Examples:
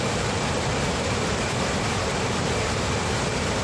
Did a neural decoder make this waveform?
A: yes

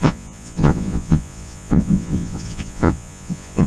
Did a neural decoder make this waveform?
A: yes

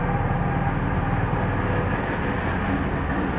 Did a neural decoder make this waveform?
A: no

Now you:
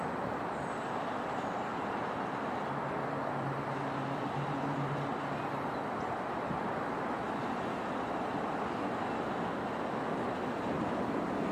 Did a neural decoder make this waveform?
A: no